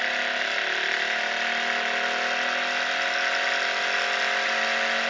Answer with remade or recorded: recorded